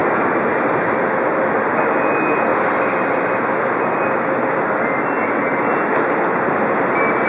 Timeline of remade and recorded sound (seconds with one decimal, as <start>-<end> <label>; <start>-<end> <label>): 0.0-7.3 recorded